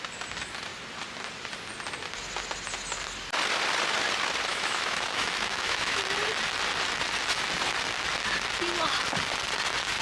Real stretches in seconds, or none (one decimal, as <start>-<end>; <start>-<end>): 0.0-4.5; 6.0-10.0